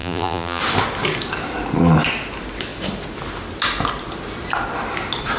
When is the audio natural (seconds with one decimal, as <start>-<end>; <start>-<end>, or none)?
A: 0.6-5.4